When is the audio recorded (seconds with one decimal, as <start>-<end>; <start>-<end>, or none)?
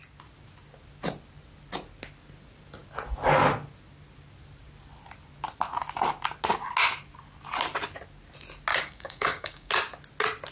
0.0-8.7; 9.7-10.5